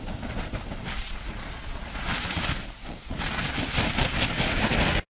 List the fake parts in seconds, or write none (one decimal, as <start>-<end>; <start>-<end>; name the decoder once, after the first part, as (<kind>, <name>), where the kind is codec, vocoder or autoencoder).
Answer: 1.0-2.4 (vocoder, Vocos); 2.8-3.4